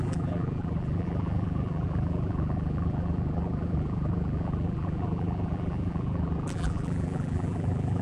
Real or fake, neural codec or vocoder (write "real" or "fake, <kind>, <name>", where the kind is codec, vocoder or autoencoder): fake, vocoder, BigVGAN v2